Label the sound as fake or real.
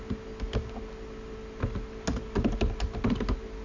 real